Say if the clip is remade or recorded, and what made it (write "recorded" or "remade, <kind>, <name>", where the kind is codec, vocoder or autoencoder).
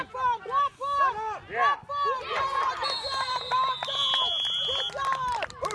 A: recorded